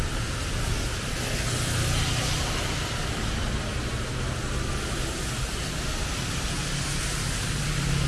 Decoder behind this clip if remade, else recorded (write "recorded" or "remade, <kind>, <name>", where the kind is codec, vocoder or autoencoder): recorded